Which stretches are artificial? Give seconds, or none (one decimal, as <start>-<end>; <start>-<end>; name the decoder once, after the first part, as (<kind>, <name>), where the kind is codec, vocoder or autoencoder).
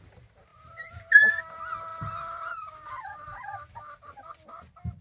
none